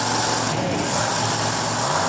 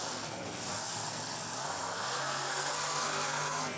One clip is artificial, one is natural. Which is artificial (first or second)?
second